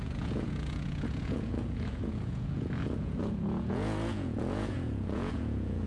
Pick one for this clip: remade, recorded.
remade